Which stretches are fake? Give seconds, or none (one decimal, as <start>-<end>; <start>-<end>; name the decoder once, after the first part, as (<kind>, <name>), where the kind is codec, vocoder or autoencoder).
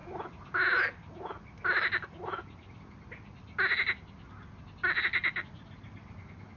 none